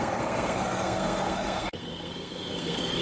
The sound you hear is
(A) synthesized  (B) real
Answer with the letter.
A